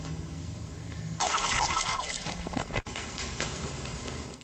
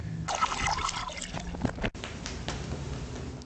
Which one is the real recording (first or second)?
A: second